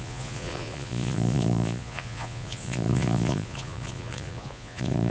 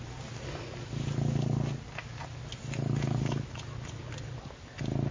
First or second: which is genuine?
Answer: second